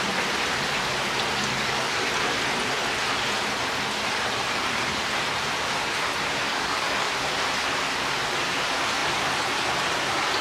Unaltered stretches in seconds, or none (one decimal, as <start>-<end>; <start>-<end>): 0.0-1.5; 2.1-6.5; 7.1-10.4